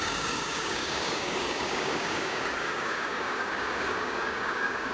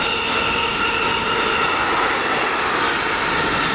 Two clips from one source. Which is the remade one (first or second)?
first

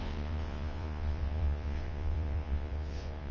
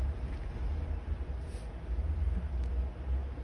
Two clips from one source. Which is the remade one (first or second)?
first